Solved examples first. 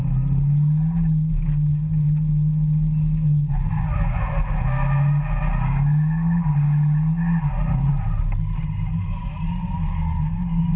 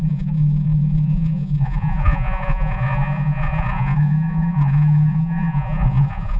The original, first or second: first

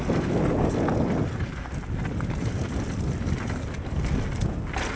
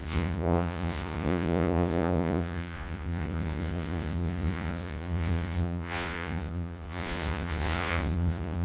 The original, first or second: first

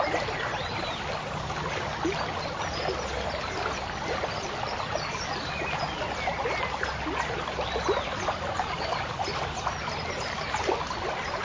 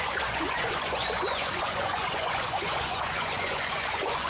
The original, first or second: first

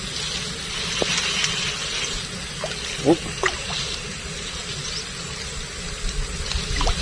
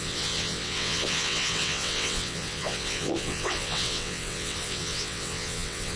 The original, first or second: first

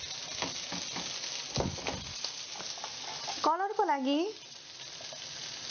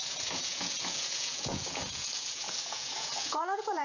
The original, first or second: first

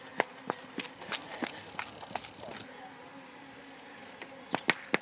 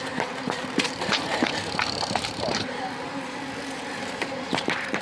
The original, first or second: first